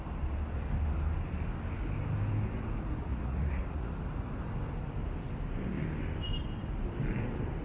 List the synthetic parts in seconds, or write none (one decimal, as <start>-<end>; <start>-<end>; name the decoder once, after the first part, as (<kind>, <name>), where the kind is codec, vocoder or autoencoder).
3.1-3.9 (vocoder, Vocos)